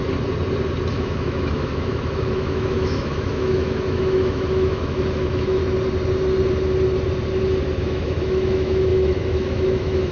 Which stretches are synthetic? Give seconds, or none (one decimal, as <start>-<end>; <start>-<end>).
0.9-5.6; 7.8-10.1